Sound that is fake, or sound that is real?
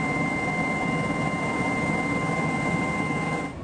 real